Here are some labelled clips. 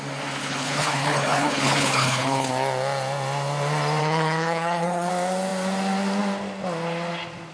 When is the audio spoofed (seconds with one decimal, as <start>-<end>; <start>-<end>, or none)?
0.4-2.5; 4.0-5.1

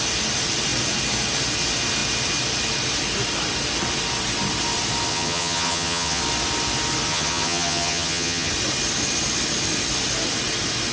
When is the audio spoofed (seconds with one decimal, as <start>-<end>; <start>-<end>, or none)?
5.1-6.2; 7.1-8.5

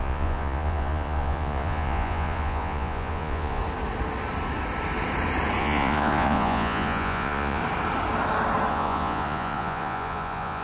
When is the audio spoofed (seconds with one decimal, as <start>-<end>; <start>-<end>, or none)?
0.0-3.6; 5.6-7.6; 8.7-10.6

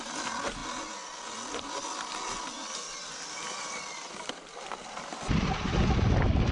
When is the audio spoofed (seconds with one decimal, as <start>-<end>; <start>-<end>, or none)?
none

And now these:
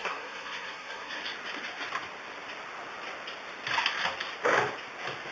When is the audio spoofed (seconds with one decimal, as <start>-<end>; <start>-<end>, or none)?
0.0-1.2

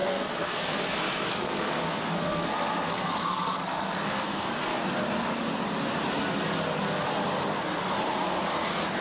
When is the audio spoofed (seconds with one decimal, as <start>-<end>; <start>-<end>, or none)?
0.0-4.8

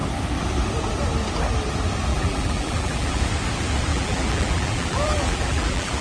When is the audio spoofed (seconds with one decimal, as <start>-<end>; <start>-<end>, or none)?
2.1-3.2; 3.9-6.0

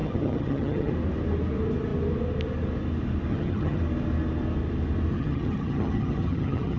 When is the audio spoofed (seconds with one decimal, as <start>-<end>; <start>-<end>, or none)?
0.0-0.9; 3.3-3.8; 5.1-6.8